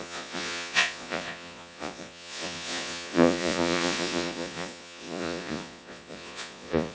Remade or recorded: remade